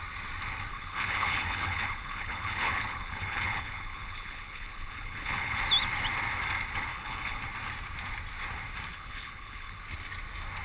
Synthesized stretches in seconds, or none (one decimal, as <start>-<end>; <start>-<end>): 0.7-5.6; 6.9-7.4; 8.9-9.8